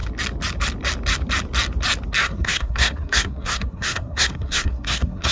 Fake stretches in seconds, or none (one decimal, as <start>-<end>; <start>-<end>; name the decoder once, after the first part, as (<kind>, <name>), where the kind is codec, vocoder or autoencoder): 2.2-5.3 (codec, SNAC)